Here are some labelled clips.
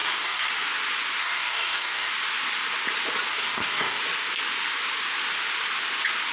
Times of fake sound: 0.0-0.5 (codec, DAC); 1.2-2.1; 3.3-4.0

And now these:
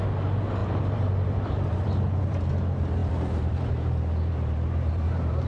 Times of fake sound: 0.6-2.5 (vocoder, BigVGAN v2); 3.0-3.7

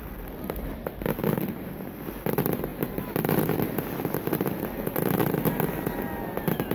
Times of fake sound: none